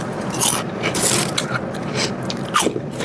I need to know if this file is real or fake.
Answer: real